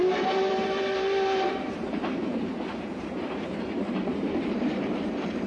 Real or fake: fake